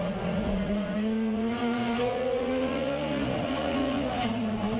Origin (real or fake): fake